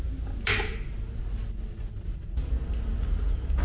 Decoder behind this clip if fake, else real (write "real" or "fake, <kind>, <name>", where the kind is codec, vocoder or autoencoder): real